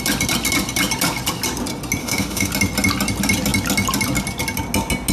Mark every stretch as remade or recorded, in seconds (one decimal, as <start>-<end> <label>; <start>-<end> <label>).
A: 0.0-2.0 recorded; 2.0-2.5 remade; 2.5-5.1 recorded